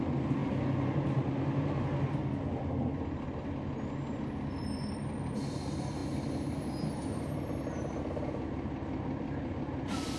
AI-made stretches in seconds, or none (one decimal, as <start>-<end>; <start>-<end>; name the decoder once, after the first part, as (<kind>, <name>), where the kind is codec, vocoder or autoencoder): none

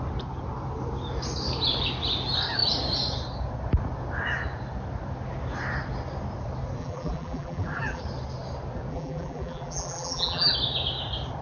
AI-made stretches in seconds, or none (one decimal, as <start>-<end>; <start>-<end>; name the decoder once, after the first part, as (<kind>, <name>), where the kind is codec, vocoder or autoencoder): 6.8-8.0 (vocoder, BigVGAN v2); 8.9-10.5

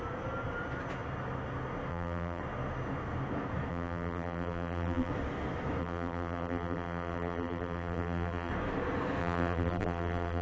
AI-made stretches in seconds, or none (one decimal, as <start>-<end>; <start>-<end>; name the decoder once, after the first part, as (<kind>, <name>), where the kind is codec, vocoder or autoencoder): 1.9-2.4 (vocoder, BigVGAN v2); 3.7-5.1; 5.8-8.5; 9.2-10.4

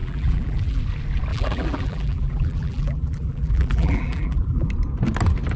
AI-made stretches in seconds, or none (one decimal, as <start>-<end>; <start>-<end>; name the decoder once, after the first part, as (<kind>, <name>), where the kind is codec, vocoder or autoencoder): 0.0-0.8 (vocoder, BigVGAN v2); 1.3-4.7

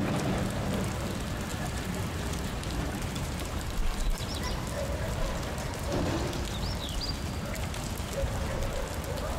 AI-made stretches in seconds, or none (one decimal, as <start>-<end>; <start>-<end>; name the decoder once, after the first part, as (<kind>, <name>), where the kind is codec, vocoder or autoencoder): 1.5-5.2 (vocoder, BigVGAN v2)